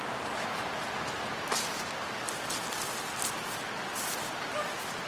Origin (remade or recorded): recorded